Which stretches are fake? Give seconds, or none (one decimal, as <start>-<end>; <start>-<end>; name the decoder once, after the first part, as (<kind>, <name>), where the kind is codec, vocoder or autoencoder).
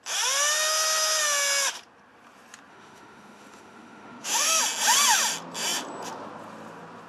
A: 2.7-4.6 (autoencoder, DAC-VAE)